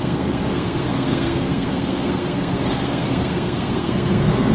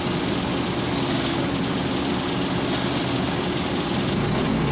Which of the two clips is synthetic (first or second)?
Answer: first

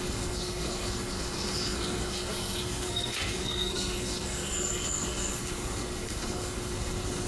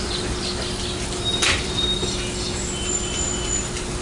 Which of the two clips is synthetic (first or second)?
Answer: first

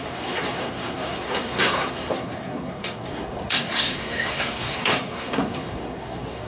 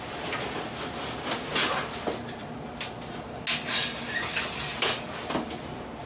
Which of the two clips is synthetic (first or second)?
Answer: first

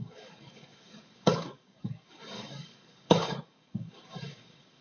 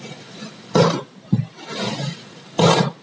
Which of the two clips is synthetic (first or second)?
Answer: first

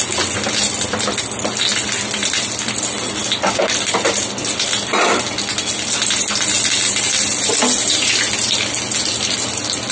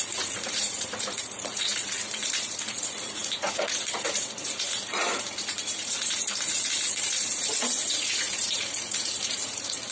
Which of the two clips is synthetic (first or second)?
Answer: second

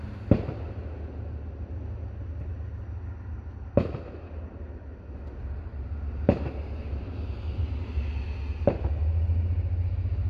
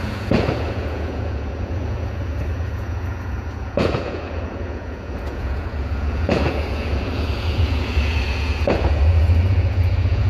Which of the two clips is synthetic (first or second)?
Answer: second